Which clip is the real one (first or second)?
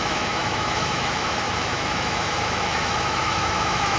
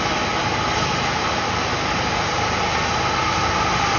second